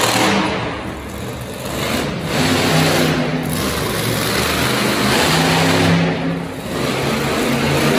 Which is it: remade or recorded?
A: recorded